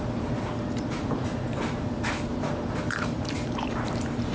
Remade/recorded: remade